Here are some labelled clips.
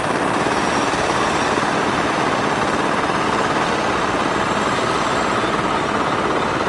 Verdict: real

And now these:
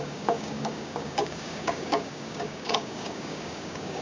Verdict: fake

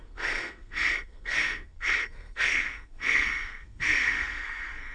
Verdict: fake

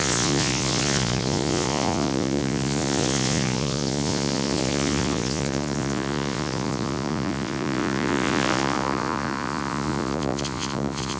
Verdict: fake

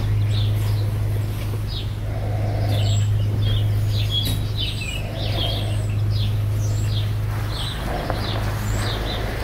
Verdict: real